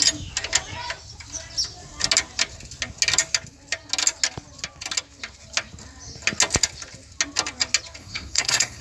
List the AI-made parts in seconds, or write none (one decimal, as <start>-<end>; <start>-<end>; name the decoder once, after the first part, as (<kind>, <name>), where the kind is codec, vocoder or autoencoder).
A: 8.0-8.8 (codec, SNAC)